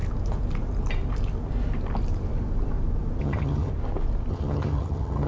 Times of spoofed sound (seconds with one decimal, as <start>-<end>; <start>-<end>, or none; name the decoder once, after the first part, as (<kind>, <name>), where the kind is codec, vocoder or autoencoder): 3.2-3.7 (vocoder, HiFi-GAN); 4.3-5.3